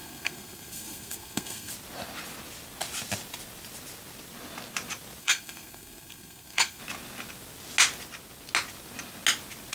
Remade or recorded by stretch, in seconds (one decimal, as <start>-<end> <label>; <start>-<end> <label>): 0.0-1.7 remade; 1.7-5.2 recorded; 5.2-6.8 remade; 6.8-9.7 recorded